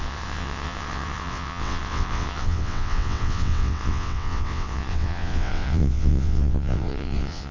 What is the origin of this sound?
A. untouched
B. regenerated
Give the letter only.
B